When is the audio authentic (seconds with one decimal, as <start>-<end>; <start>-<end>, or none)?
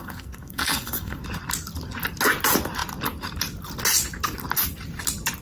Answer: 1.2-5.4